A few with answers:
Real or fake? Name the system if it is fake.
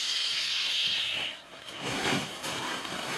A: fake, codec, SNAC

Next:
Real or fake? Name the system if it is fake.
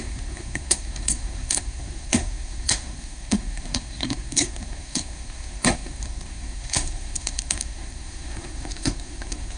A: fake, codec, SNAC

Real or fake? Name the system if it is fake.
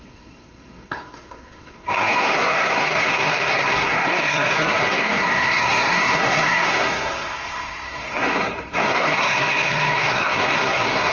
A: fake, codec, SNAC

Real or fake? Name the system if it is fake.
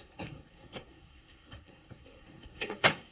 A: fake, codec, SNAC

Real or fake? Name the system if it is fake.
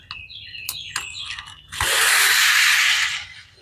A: real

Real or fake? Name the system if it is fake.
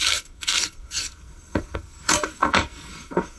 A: fake, codec, SNAC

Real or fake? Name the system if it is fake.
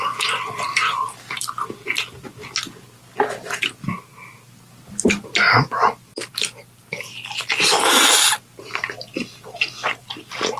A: real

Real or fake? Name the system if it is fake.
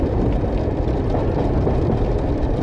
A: real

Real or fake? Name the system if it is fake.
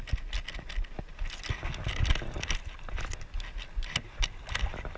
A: real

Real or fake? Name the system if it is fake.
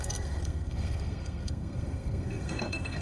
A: fake, codec, SNAC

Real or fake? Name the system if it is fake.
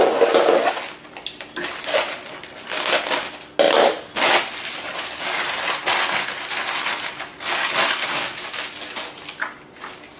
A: real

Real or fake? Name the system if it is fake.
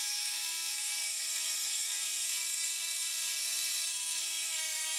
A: fake, codec, SNAC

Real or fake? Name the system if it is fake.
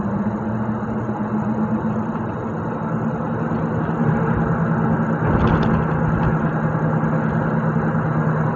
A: real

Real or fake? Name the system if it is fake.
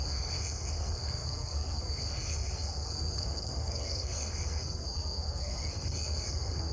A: fake, codec, SNAC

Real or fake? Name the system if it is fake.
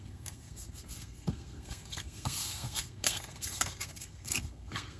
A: fake, codec, SNAC